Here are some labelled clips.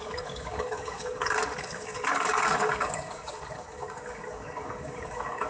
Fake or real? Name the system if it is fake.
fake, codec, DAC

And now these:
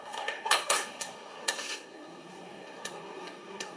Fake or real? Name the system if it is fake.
fake, codec, SNAC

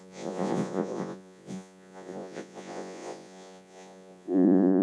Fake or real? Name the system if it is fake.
fake, vocoder, Vocos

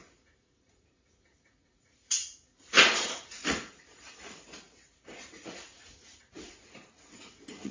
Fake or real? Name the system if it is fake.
fake, vocoder, Vocos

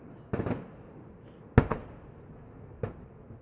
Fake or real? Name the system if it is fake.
real